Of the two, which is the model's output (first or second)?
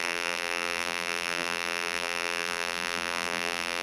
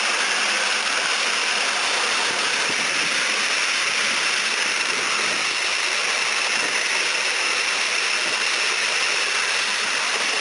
first